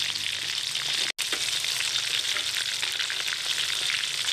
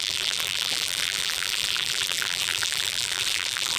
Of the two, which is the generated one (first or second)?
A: second